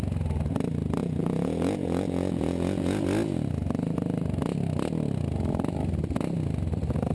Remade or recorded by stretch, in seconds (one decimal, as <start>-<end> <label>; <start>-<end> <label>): 0.0-1.0 recorded; 1.0-3.0 remade; 3.0-7.1 recorded